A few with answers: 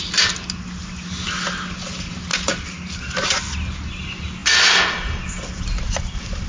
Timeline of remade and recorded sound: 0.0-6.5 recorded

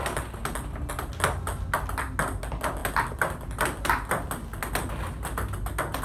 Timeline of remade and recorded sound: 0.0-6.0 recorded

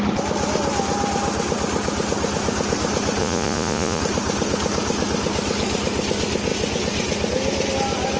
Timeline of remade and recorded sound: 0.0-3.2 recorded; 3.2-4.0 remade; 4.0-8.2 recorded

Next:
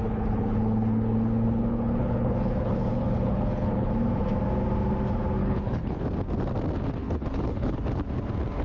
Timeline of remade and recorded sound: 0.0-3.9 remade; 3.9-5.4 recorded; 5.4-6.0 remade; 6.0-7.0 recorded; 7.0-7.8 remade; 7.8-8.6 recorded

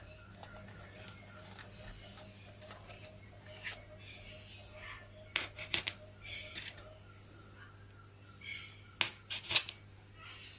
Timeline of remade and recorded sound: 0.0-10.6 recorded

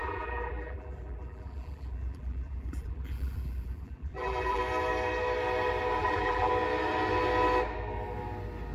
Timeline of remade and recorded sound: 0.0-4.6 remade; 4.6-6.0 recorded; 6.0-6.5 remade; 6.5-8.7 recorded

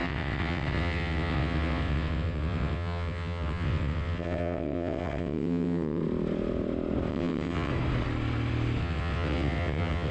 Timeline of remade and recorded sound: 0.0-6.0 remade; 6.0-7.1 recorded; 7.1-7.7 remade; 7.7-8.8 recorded; 8.8-10.1 remade